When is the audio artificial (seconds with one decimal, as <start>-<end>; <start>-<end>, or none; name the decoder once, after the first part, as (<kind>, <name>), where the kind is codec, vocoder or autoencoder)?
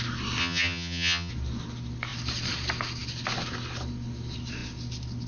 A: 0.4-1.3 (vocoder, HiFi-GAN)